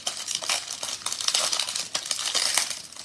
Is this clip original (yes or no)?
yes